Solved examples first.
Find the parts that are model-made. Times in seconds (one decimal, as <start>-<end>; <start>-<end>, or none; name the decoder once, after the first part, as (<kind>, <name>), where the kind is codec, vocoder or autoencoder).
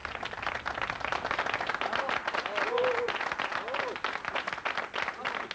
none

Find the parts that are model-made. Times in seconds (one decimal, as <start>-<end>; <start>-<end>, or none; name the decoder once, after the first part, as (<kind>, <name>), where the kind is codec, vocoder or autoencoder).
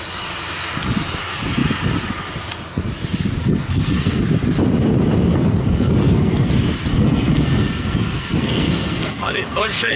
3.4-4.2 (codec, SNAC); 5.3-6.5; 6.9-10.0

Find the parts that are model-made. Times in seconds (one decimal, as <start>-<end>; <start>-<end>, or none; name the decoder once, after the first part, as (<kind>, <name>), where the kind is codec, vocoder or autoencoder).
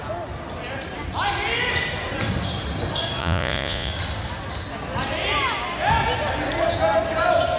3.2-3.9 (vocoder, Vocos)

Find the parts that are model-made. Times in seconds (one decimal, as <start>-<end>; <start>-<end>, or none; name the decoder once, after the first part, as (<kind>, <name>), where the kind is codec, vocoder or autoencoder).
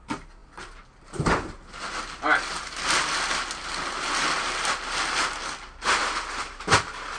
none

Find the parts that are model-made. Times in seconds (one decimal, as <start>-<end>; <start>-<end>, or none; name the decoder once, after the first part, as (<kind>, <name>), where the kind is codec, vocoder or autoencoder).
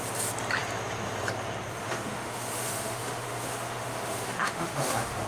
1.8-5.3 (autoencoder, DAC-VAE)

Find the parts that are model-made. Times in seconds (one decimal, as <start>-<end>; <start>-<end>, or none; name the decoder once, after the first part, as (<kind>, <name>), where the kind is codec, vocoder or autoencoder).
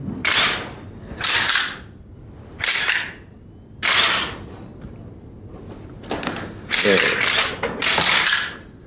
none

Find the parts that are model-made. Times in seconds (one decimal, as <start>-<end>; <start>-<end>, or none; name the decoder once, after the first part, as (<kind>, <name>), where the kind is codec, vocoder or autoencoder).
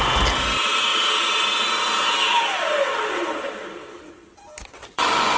4.7-5.4 (vocoder, Vocos)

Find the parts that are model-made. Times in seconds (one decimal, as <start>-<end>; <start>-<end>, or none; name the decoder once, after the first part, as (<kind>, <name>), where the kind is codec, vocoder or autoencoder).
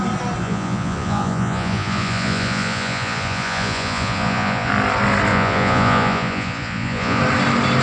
0.4-4.7 (vocoder, Vocos); 5.3-7.2